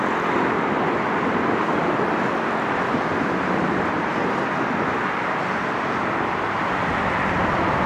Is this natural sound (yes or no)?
no